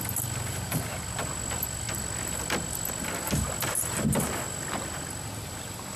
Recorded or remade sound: recorded